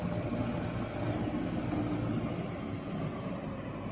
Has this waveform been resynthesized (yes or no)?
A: no